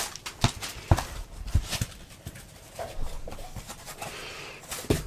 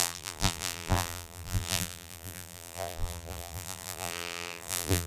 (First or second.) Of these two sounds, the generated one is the second